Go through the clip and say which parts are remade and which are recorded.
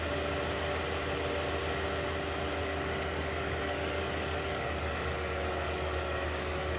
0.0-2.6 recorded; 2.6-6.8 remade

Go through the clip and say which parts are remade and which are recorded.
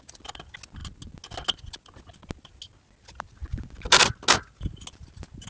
0.0-5.5 recorded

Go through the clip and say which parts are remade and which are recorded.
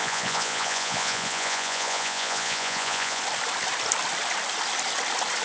0.0-3.2 remade; 3.2-5.4 recorded